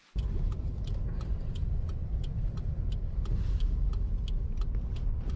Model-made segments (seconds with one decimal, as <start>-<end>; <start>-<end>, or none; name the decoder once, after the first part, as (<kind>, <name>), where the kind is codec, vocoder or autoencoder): 0.7-3.9 (vocoder, BigVGAN v2)